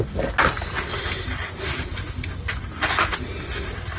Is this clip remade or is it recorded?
recorded